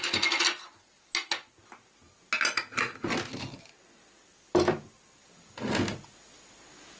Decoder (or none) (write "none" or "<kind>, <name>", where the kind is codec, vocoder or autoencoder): none